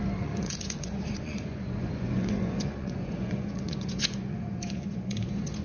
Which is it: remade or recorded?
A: remade